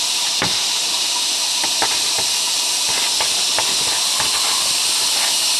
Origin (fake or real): real